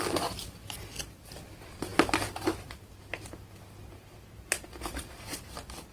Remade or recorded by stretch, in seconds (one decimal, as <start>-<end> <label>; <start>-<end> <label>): 0.0-5.9 recorded